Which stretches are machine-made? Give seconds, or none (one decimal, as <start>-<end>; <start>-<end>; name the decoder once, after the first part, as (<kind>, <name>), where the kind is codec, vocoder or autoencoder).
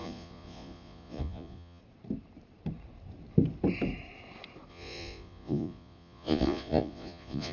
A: 0.0-1.8 (vocoder, Vocos); 4.7-7.5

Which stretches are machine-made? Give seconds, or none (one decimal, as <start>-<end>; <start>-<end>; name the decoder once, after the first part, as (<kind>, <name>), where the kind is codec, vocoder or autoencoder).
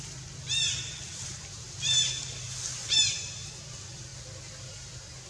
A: 2.8-3.5 (vocoder, BigVGAN v2)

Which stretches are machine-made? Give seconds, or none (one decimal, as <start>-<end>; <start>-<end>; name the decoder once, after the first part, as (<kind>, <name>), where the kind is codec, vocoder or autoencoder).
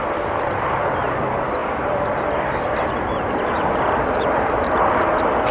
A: 1.6-4.9 (vocoder, BigVGAN v2)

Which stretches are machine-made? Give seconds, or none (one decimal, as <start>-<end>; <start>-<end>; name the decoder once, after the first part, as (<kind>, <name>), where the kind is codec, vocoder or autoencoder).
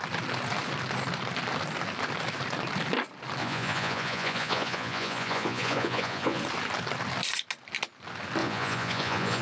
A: 3.4-6.4 (vocoder, Vocos); 8.4-9.4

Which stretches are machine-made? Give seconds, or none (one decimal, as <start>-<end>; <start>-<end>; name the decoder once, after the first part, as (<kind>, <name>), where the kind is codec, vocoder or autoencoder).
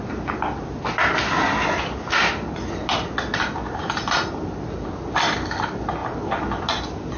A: none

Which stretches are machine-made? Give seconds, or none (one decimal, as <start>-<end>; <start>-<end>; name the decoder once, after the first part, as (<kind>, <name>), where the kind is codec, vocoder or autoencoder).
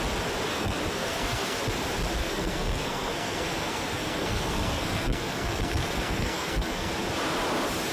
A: 0.5-1.6 (codec, SNAC); 2.2-6.9